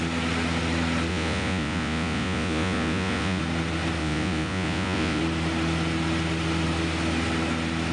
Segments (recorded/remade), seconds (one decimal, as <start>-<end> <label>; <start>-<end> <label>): 0.0-1.1 recorded; 1.1-3.4 remade; 3.4-4.0 recorded; 4.0-5.2 remade; 5.2-7.9 recorded